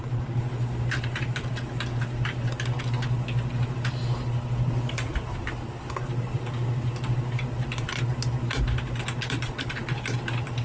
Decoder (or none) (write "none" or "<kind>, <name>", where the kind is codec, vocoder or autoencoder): none